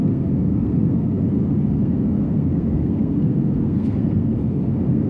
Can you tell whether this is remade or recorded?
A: remade